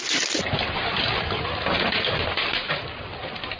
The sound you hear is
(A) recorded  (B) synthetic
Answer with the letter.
A